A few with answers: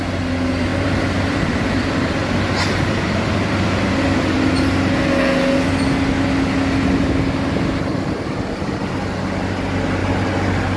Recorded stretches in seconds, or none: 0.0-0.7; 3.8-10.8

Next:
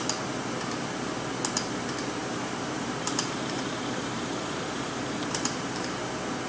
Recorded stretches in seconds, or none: 0.0-2.2; 6.1-6.5

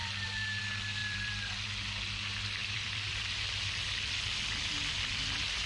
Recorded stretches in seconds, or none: 0.6-1.0; 1.7-2.6; 3.8-5.7

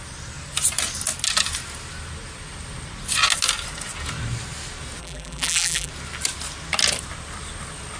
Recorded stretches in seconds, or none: 0.0-5.0; 5.9-8.0

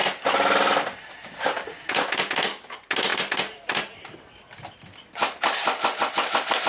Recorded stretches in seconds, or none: 0.0-1.0; 3.1-5.4

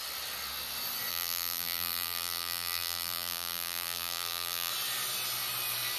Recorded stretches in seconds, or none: 0.0-1.1; 4.7-6.0

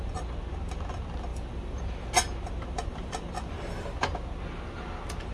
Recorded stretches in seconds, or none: 0.0-1.3; 2.1-2.9; 4.0-5.3

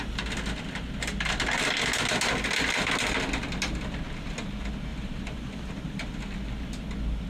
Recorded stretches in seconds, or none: 0.0-4.9; 5.7-7.3